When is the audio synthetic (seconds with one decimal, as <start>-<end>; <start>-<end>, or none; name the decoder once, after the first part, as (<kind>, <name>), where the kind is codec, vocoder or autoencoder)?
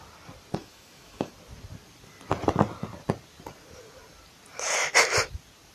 0.6-1.3 (autoencoder, DAC-VAE)